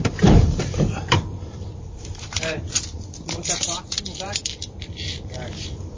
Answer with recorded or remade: remade